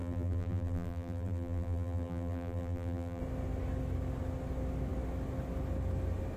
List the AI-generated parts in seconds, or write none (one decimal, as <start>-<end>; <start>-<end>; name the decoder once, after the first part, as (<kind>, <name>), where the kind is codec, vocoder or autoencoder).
0.0-3.2 (vocoder, BigVGAN v2)